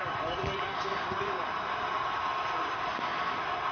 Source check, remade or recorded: recorded